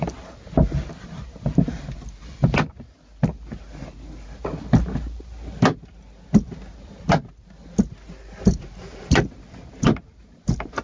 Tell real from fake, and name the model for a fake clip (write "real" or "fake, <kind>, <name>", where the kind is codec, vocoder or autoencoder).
real